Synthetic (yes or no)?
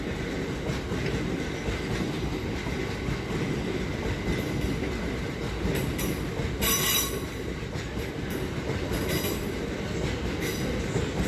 no